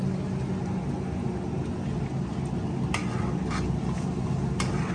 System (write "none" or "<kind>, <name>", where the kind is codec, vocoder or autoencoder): none